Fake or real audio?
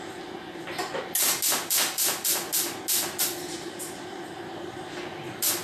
real